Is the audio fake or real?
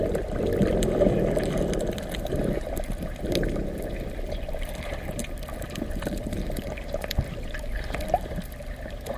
real